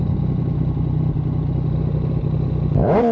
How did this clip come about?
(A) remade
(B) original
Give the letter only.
B